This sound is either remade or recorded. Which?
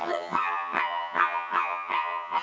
remade